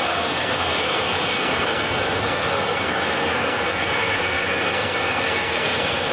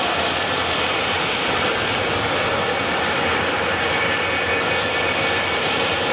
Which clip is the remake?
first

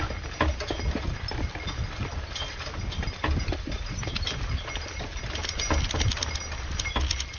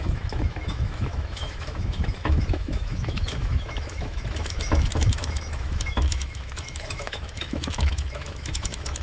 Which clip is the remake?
second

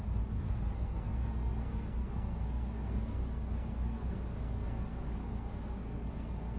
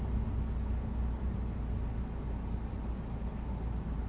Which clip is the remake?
first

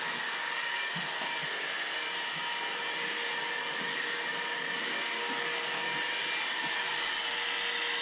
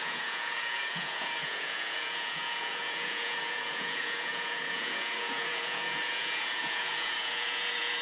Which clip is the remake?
second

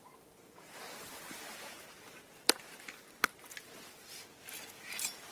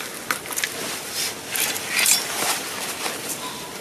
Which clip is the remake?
second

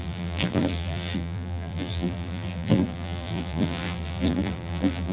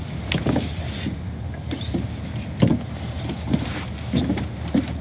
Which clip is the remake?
first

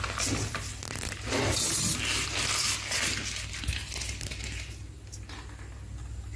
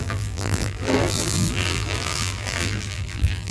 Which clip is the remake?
second